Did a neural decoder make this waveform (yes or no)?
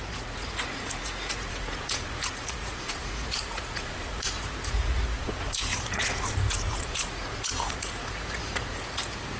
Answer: yes